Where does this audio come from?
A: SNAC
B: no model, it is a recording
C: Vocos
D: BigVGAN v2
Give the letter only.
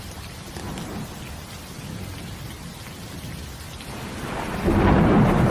B